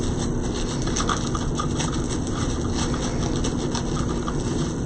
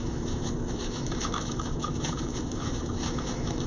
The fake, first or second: second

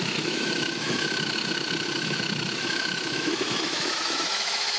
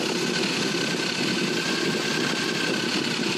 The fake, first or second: first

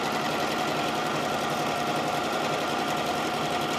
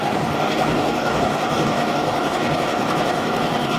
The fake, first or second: second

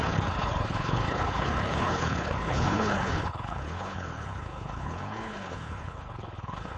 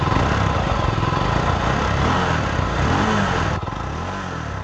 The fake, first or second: first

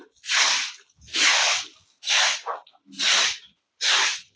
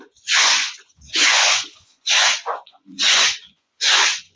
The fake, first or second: second